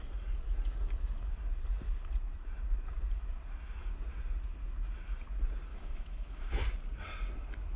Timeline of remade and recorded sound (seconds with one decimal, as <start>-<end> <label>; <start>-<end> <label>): 0.0-5.7 recorded; 5.7-6.6 remade; 6.6-7.8 recorded